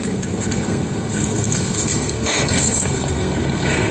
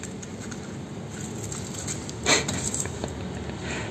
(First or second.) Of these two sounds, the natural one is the second